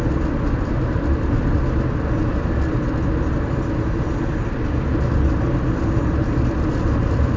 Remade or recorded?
recorded